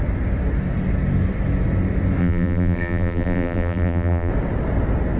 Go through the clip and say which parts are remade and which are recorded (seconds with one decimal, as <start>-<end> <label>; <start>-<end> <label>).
0.0-2.2 recorded; 2.2-4.3 remade; 4.3-5.2 recorded